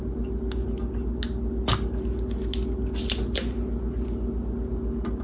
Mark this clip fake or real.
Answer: real